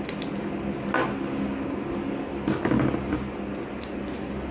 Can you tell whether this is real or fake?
real